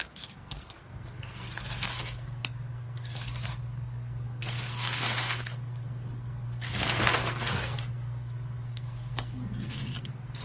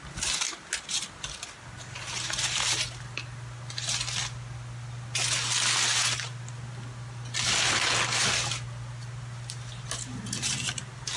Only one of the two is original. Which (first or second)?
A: second